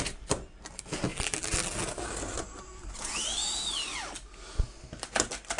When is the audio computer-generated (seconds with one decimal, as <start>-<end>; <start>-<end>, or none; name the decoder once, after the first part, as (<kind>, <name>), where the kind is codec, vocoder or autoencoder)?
1.1-1.8 (vocoder, BigVGAN v2)